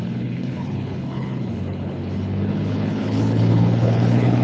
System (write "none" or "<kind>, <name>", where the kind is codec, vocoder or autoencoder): codec, HILCodec